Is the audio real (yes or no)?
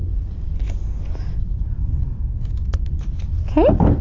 yes